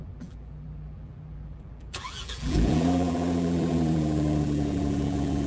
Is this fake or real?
fake